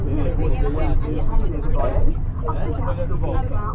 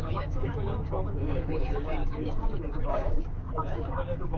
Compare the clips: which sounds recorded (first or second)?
first